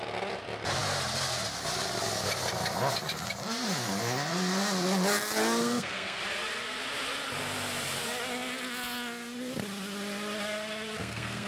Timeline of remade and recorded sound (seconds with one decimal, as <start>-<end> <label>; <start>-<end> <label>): 0.0-5.6 recorded; 5.6-6.2 remade; 6.2-11.0 recorded; 11.0-11.5 remade